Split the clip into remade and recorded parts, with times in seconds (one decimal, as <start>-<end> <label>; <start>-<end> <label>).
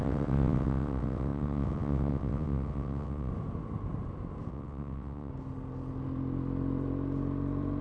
0.0-3.3 remade; 3.3-4.5 recorded; 4.5-5.3 remade; 5.3-7.8 recorded